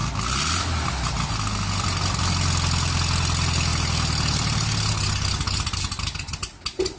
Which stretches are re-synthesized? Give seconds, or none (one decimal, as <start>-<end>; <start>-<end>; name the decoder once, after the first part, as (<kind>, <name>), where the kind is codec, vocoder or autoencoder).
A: none